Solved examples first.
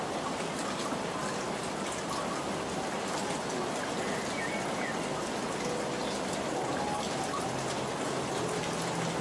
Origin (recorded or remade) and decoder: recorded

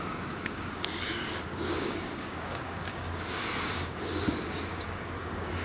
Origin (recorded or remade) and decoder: remade, codec, DAC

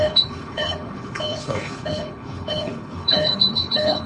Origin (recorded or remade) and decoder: remade, codec, HILCodec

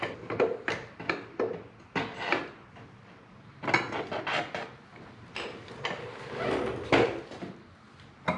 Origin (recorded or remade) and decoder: recorded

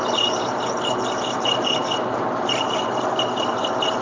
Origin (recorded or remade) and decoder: recorded